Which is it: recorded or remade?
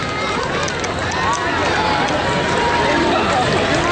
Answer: recorded